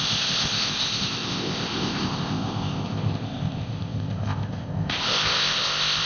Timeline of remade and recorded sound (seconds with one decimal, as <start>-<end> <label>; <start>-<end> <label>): 0.0-6.1 remade